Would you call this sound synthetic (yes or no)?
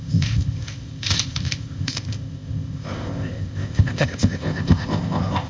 yes